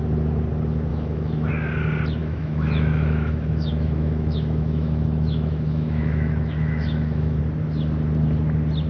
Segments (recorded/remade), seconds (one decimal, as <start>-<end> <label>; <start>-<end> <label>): 0.0-0.9 recorded; 0.9-1.5 remade; 1.5-2.2 recorded; 2.2-7.4 remade; 7.4-8.9 recorded